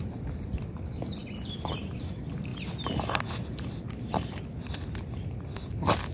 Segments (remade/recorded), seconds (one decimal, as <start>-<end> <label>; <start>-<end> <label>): 0.0-6.1 recorded